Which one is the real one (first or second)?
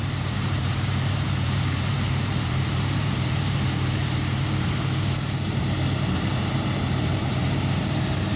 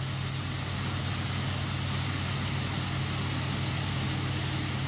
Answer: second